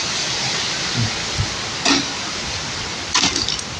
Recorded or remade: recorded